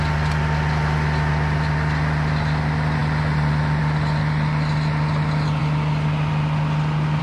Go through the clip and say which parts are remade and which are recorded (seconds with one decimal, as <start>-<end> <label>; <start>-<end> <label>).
0.0-7.2 recorded